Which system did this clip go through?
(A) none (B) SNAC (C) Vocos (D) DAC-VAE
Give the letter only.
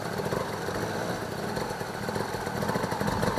A